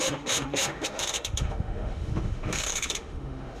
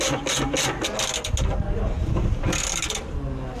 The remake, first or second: first